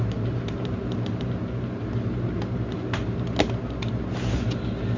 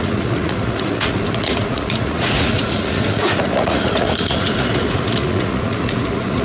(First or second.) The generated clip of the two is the second